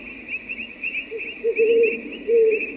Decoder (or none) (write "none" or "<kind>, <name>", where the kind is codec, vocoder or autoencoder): vocoder, BigVGAN v2